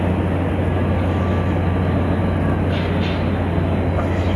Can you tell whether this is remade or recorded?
recorded